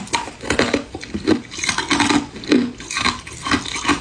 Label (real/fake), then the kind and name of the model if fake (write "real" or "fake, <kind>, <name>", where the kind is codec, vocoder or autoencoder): real